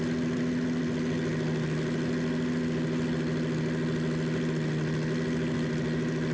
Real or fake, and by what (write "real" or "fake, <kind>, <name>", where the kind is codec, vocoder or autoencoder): real